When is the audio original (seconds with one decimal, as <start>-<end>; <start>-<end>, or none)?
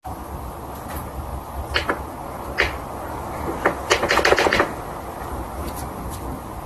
0.0-6.7